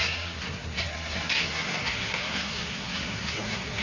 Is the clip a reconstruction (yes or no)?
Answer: yes